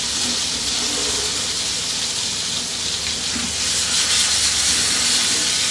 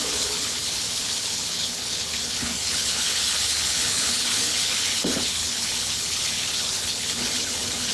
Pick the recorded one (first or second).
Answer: first